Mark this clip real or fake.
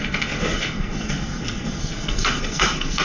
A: fake